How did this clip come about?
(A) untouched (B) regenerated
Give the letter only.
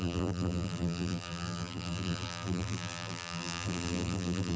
B